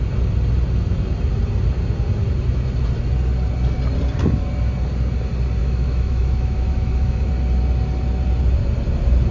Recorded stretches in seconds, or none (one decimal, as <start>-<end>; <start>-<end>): 0.0-5.6; 7.3-9.3